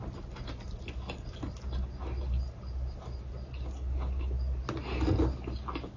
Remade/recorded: recorded